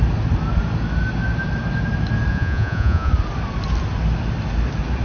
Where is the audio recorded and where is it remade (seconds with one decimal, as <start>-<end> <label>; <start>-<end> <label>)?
0.0-2.3 recorded; 2.3-3.1 remade; 3.1-5.0 recorded